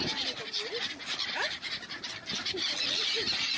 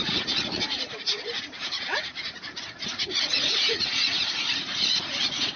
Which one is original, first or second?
first